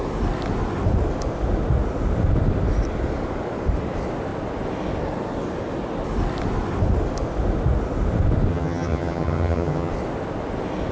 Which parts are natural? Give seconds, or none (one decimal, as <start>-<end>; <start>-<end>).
0.0-8.5; 9.9-10.9